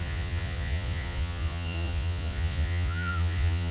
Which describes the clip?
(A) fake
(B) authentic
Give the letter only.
A